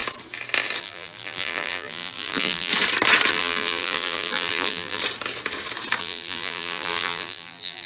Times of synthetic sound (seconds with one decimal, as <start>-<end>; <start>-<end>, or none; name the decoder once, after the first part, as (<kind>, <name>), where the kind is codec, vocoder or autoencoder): 0.8-2.7 (vocoder, BigVGAN v2); 3.3-5.0; 6.0-7.9